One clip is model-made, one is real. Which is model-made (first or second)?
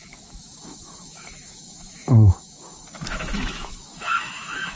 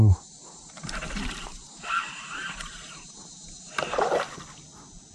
first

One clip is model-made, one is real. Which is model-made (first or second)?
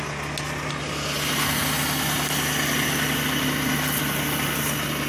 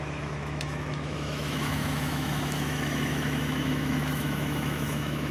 second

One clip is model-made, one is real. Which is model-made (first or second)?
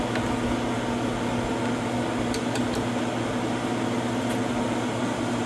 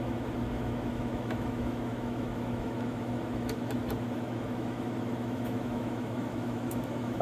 second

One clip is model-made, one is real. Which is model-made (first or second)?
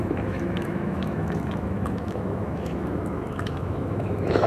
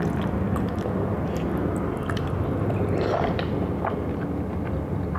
first